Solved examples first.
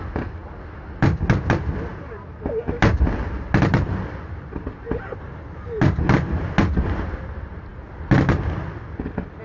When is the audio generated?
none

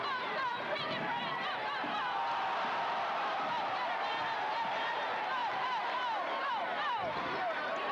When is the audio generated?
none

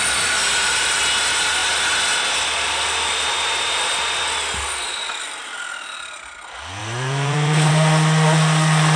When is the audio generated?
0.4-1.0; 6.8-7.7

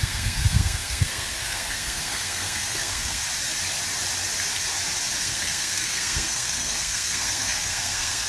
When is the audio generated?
0.0-3.2; 5.2-8.3